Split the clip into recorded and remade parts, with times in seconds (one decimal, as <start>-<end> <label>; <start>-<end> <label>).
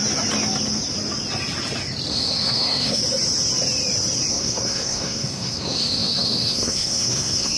0.0-2.1 recorded; 2.1-3.0 remade; 3.0-4.3 recorded; 4.3-7.6 remade